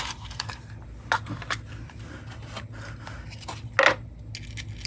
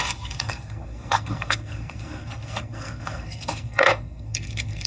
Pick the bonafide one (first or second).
first